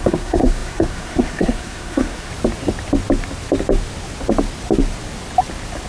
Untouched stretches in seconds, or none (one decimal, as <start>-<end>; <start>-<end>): 2.3-5.9